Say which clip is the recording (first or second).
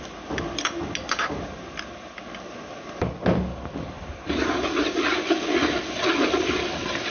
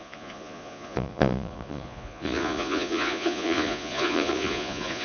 first